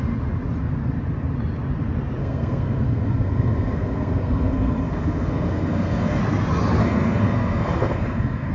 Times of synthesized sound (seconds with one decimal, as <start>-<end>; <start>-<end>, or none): 2.2-6.2; 6.8-8.5